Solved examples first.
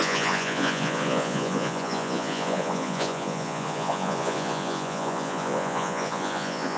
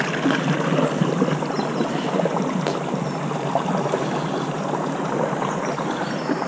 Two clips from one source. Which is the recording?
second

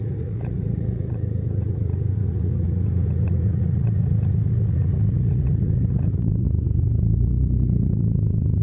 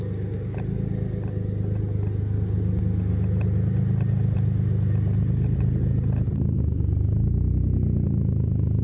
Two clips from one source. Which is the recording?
second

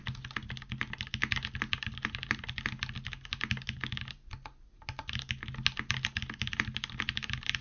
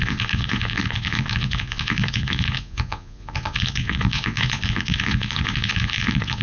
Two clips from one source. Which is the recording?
first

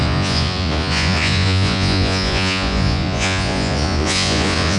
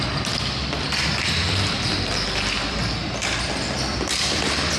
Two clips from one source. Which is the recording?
second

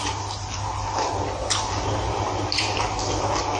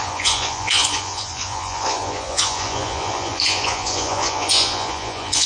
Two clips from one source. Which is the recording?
first